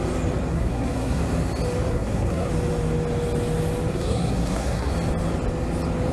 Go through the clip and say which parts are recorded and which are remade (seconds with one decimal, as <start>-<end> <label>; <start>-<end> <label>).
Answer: 0.0-0.5 recorded; 0.5-1.2 remade; 1.2-1.9 recorded; 1.9-2.5 remade; 2.5-3.9 recorded; 3.9-4.9 remade; 4.9-6.1 recorded